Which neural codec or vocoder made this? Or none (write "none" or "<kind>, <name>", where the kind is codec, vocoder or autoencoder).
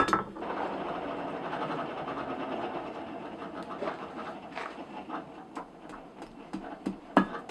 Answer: none